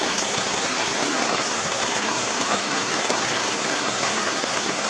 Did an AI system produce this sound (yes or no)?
yes